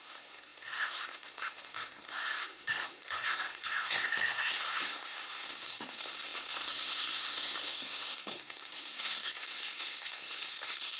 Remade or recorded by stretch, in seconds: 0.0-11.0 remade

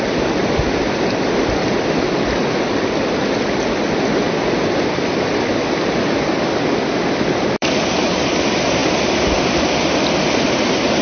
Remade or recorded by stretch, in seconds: 0.0-11.0 remade

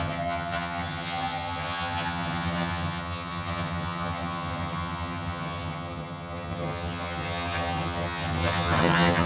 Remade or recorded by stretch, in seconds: 0.0-9.3 remade

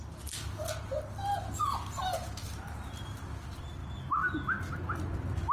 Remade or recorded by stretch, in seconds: 0.0-5.5 recorded

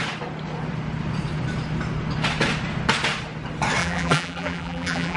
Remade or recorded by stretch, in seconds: 0.0-3.8 recorded; 3.8-5.2 remade

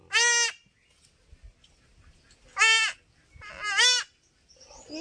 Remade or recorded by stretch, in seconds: 0.0-5.0 recorded